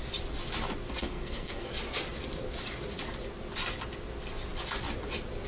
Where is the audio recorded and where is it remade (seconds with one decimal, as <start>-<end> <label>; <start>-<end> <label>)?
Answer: 0.0-1.0 recorded; 1.0-1.7 remade; 1.7-5.5 recorded